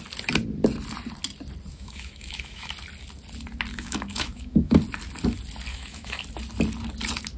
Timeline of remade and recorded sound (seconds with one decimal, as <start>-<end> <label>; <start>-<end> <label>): 0.0-1.7 recorded; 1.7-2.7 remade; 2.7-3.7 recorded; 3.7-4.8 remade; 4.8-5.7 recorded; 5.7-6.2 remade; 6.2-7.4 recorded

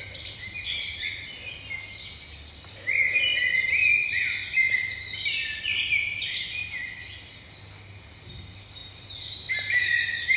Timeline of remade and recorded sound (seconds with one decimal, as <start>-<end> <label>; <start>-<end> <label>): 0.0-10.4 recorded

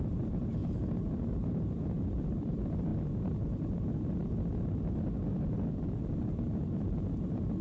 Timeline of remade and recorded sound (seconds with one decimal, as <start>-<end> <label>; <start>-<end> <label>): 0.0-7.6 remade